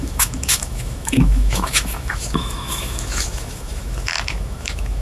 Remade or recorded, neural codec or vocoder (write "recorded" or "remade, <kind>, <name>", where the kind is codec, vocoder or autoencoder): remade, autoencoder, DAC-VAE